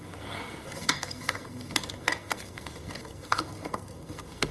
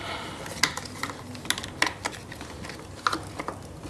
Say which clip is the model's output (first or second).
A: first